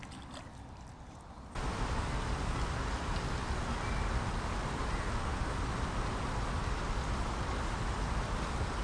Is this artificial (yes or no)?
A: no